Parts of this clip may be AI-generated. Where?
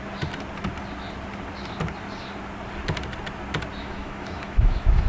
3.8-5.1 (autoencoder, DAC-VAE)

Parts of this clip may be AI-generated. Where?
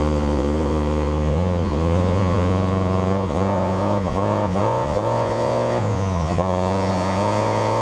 0.0-7.8 (vocoder, Vocos)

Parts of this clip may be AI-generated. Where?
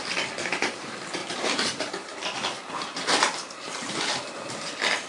1.2-4.3 (vocoder, BigVGAN v2)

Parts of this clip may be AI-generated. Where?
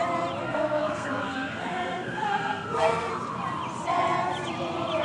0.4-3.1 (codec, SNAC)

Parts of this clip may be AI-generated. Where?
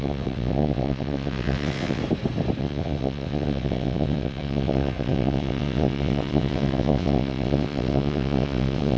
0.0-2.0 (vocoder, WaveNeXt); 2.6-9.0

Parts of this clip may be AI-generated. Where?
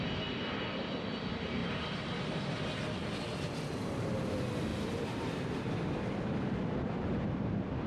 1.6-2.7 (vocoder, BigVGAN v2); 4.7-6.1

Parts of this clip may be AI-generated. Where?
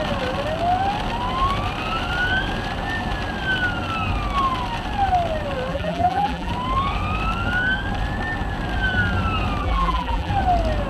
5.7-6.5 (vocoder, BigVGAN v2); 9.6-10.3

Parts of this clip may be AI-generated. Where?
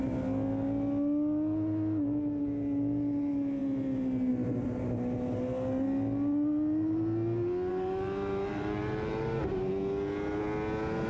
7.7-9.7 (vocoder, BigVGAN v2)